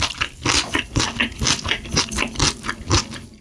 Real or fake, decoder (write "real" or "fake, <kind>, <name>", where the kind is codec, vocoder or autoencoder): real